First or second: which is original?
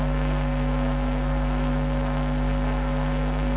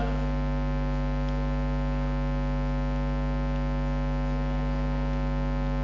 second